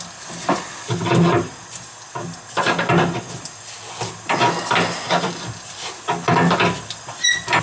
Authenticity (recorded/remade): recorded